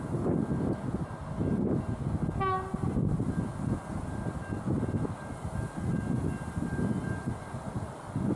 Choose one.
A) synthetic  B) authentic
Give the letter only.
B